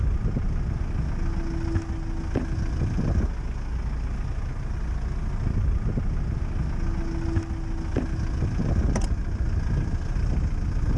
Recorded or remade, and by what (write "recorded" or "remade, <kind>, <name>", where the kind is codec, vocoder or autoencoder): recorded